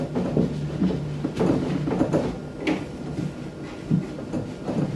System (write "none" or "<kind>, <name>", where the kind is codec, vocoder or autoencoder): none